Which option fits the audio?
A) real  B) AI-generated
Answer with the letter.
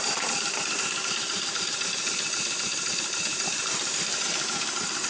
A